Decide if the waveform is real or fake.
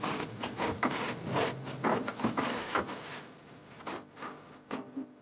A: real